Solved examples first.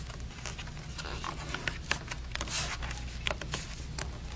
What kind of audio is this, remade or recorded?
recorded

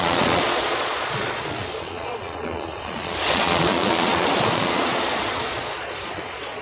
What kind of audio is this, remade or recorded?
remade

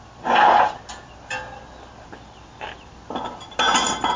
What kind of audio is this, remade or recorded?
recorded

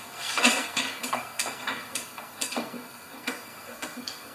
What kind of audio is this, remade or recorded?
remade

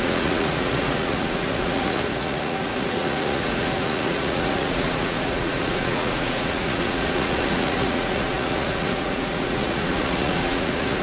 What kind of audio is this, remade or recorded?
remade